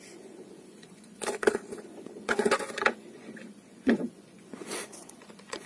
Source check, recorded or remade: remade